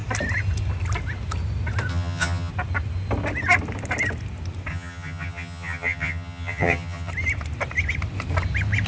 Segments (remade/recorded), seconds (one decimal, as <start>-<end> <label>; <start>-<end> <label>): 0.0-1.9 recorded; 1.9-2.5 remade; 2.5-4.7 recorded; 4.7-7.1 remade; 7.1-8.9 recorded